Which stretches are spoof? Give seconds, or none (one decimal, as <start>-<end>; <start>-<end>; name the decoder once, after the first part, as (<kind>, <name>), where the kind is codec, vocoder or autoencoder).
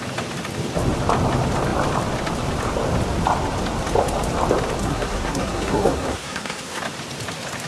4.8-6.8 (codec, SNAC)